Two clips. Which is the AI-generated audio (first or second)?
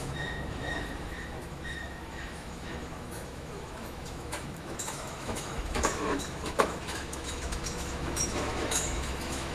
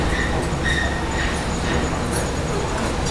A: first